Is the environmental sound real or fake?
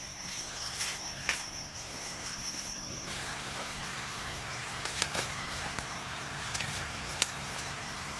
fake